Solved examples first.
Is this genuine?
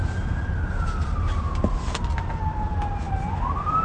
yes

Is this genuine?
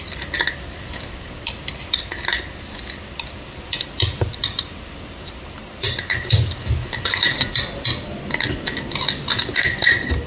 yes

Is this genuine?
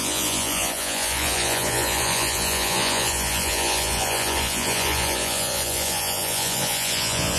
no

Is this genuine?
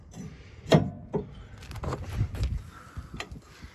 yes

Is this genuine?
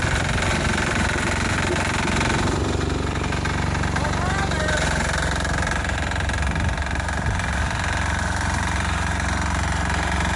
yes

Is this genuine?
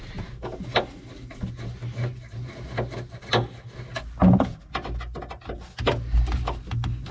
yes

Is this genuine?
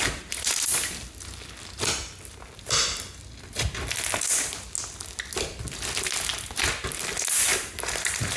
yes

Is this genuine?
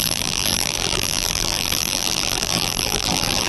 no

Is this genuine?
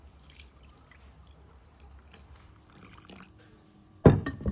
yes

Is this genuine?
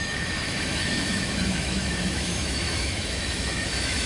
no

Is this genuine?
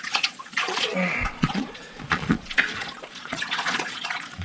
no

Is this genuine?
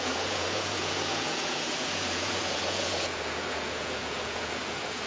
no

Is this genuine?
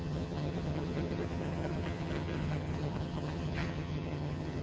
no